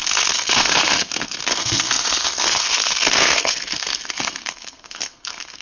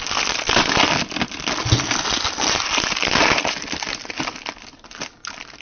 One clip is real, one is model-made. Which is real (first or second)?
second